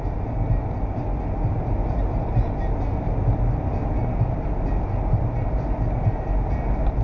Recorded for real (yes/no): yes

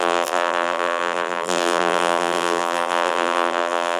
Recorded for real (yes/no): no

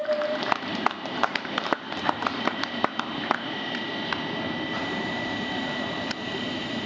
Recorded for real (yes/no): no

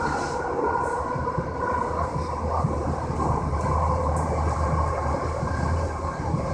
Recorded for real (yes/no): no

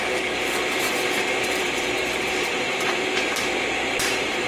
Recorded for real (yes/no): no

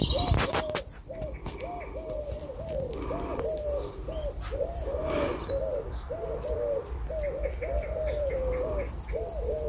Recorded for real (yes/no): no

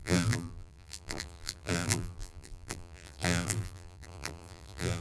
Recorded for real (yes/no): no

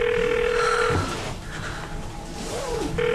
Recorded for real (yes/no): no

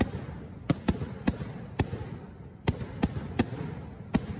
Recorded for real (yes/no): yes